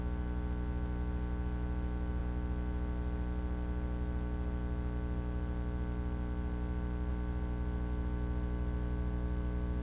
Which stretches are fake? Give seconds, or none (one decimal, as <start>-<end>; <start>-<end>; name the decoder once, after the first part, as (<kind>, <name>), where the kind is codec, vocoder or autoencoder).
none